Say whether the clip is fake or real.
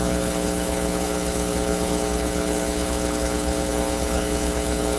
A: fake